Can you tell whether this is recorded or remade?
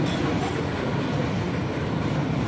recorded